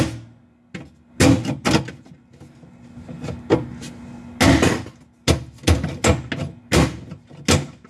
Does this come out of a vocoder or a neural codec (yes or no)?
no